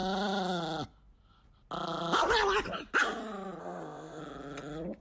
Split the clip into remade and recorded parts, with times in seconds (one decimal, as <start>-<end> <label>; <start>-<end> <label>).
0.0-3.6 recorded; 3.6-4.2 remade; 4.2-5.0 recorded